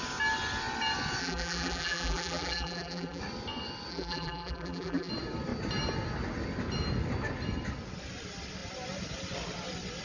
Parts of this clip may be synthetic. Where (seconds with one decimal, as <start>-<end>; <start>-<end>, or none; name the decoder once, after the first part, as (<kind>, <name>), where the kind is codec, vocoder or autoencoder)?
1.2-3.2 (vocoder, BigVGAN v2); 3.9-5.1